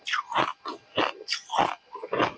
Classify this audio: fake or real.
real